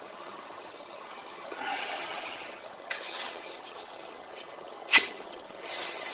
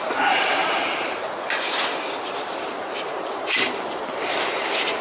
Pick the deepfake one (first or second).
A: first